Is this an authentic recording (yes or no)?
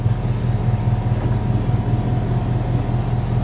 yes